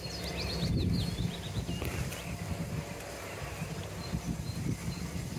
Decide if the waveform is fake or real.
real